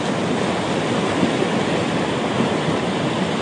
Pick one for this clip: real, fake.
real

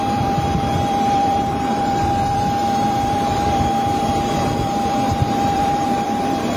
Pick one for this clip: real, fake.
fake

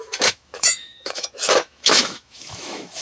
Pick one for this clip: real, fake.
fake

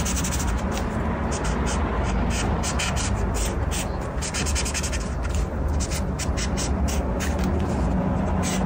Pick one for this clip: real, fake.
real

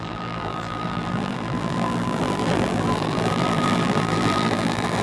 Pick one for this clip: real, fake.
fake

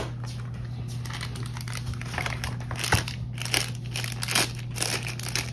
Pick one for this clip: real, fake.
real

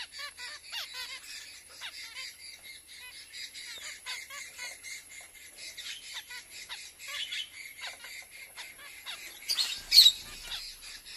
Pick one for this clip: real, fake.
real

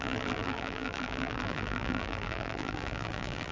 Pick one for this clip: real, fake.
fake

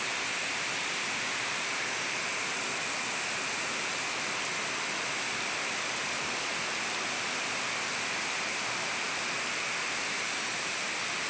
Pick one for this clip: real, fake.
real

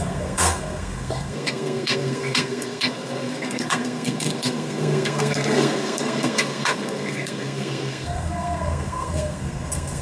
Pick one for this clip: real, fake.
fake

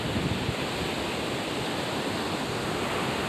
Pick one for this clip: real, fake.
real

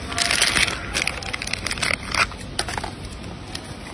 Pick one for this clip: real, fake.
real